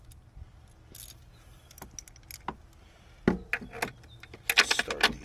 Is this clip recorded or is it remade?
recorded